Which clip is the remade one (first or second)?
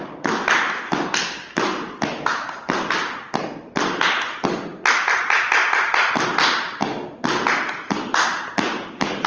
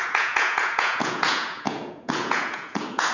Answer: second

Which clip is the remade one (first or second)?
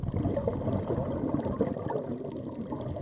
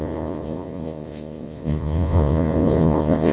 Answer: second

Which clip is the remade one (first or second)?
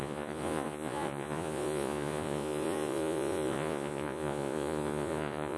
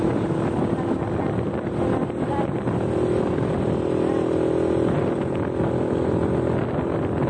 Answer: first